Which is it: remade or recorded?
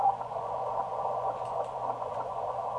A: remade